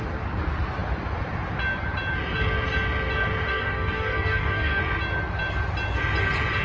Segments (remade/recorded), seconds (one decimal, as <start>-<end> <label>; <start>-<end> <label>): 0.0-3.5 recorded; 3.5-4.8 remade; 4.8-6.6 recorded